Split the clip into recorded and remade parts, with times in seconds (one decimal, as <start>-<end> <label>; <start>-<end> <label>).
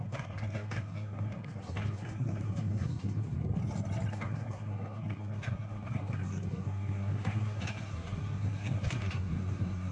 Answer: 0.0-3.6 remade; 3.6-4.1 recorded; 4.1-9.9 remade